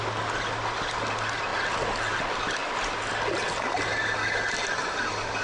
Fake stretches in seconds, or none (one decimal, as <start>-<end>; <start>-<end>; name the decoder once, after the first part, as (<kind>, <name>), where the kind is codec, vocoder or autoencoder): none